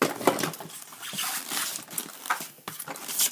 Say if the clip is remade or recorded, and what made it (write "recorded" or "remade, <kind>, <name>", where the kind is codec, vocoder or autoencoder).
recorded